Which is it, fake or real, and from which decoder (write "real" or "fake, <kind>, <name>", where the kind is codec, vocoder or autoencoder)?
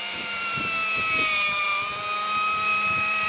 fake, vocoder, BigVGAN v2